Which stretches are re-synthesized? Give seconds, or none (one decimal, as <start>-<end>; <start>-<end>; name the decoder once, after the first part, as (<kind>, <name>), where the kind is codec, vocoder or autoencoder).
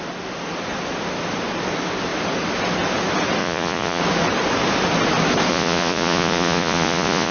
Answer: 3.4-4.0 (vocoder, Vocos); 5.5-7.3